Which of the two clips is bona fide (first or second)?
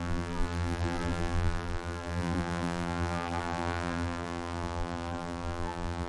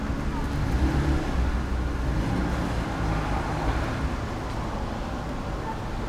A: second